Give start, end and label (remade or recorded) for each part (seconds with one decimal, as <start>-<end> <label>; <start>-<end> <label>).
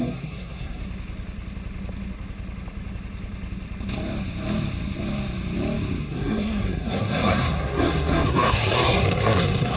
0.0-0.8 remade; 0.8-6.0 recorded; 6.0-9.8 remade